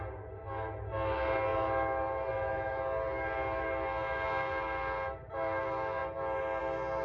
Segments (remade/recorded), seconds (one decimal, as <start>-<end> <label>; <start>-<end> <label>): 0.0-7.0 recorded